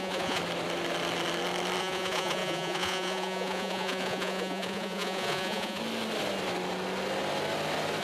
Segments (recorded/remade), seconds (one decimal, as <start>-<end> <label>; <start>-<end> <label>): 0.0-0.4 remade; 0.4-1.8 recorded; 1.8-5.8 remade; 5.8-8.0 recorded